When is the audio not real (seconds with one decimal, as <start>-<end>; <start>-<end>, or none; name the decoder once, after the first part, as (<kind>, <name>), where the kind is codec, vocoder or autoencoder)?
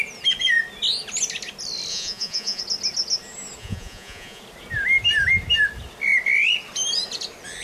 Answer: 1.9-2.6 (vocoder, Vocos); 3.6-4.4